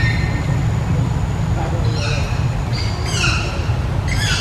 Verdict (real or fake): real